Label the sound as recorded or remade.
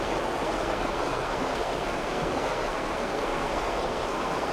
remade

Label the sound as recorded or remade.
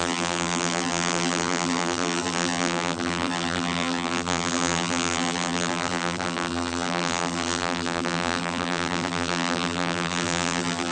remade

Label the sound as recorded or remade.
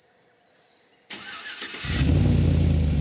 recorded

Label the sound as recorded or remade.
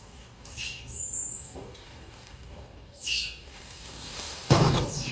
remade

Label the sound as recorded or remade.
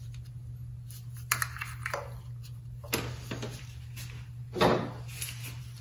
recorded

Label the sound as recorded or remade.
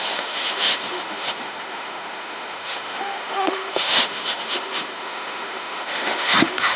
remade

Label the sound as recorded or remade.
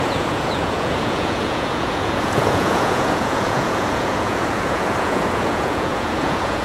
remade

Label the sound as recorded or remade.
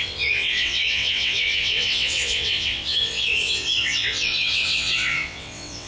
remade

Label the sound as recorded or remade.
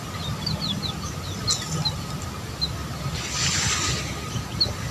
recorded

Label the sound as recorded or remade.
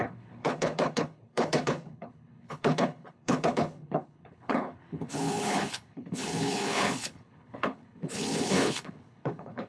remade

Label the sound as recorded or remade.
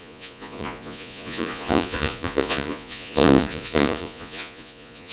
remade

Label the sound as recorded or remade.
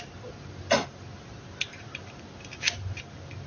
recorded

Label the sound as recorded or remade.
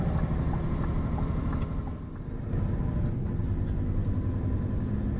recorded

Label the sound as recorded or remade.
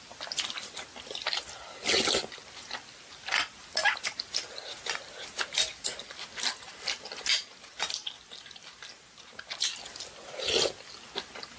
recorded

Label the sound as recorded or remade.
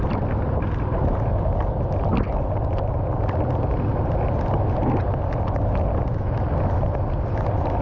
recorded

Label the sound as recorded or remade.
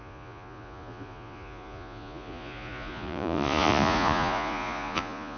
remade